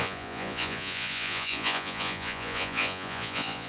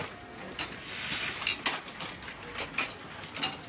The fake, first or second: first